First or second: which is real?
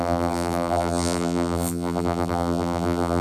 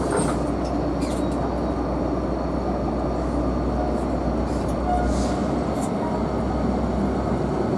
second